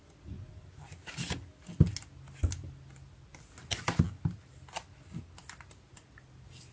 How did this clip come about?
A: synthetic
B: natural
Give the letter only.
B